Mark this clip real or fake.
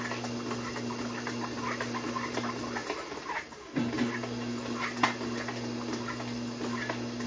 real